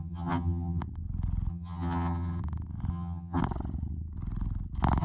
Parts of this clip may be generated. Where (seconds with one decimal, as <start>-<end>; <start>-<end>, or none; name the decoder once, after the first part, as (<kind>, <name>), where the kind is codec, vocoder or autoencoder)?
0.0-0.8 (vocoder, HiFi-GAN); 1.5-2.4; 2.9-3.4